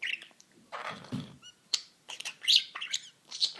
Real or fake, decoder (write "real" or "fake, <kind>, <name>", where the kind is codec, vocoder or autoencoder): fake, vocoder, BigVGAN v2